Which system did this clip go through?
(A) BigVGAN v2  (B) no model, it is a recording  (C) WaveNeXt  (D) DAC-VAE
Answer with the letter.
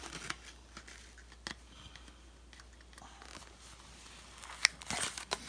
B